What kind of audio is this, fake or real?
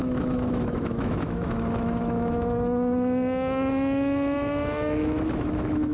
fake